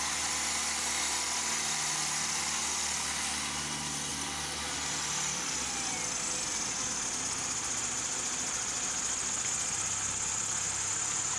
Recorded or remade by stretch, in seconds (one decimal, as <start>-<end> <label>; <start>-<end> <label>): 0.0-11.4 recorded